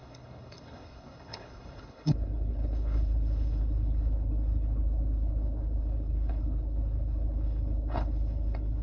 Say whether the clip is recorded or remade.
remade